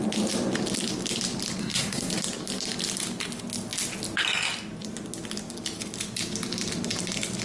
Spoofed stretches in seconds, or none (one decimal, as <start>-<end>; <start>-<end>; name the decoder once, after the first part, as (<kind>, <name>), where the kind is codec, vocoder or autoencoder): 1.6-2.1 (codec, SNAC)